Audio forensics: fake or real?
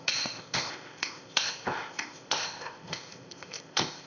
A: fake